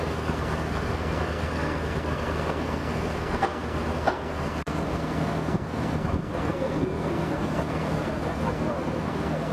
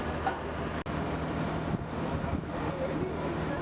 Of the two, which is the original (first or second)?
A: second